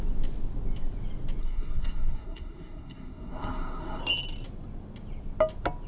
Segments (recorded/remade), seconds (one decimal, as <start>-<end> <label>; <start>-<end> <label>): 0.0-1.4 recorded; 1.4-4.0 remade; 4.0-5.9 recorded